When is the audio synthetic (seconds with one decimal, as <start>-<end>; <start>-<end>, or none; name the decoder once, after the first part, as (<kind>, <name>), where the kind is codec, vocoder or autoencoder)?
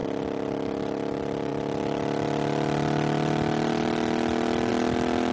none